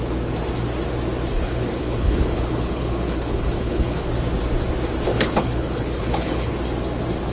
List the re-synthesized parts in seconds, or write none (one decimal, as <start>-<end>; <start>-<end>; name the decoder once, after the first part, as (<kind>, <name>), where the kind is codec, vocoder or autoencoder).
1.3-4.1 (codec, HILCodec); 5.1-6.5